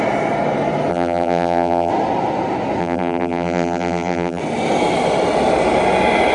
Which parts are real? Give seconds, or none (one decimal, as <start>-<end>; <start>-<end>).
0.0-0.9; 1.9-2.8; 4.4-6.3